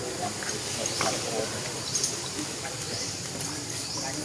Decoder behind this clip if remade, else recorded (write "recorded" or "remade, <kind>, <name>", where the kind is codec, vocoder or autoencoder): recorded